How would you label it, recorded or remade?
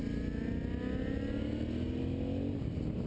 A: recorded